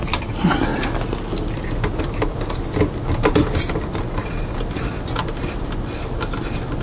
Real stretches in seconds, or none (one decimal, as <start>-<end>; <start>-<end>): 0.0-6.8

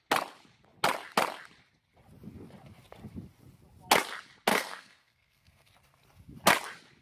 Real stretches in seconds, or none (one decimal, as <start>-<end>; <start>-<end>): 0.0-4.5; 5.7-7.0